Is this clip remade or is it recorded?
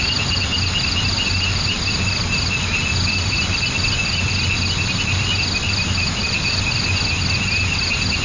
recorded